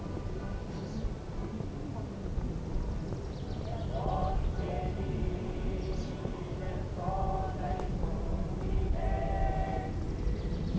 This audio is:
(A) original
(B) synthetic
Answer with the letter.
A